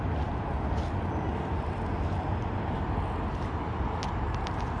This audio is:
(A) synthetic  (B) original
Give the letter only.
B